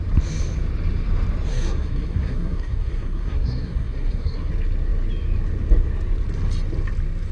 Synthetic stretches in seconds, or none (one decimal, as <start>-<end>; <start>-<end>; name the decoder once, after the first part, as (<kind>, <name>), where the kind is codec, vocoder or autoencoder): 1.5-4.5 (codec, SNAC)